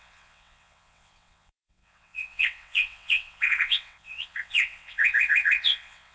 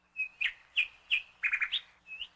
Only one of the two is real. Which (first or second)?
second